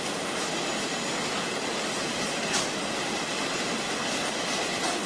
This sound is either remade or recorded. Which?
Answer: recorded